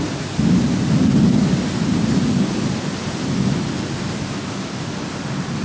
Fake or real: real